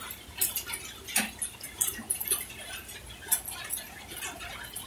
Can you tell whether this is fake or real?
real